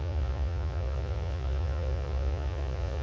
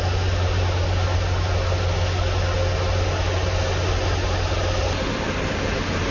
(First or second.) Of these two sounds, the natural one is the second